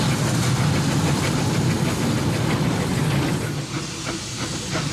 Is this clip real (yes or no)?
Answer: yes